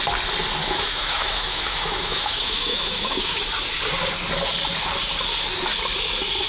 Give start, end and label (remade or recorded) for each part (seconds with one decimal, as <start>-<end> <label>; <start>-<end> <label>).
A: 0.0-0.6 recorded; 0.6-3.4 remade; 3.4-6.5 recorded